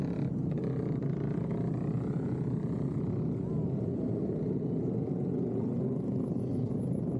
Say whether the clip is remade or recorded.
recorded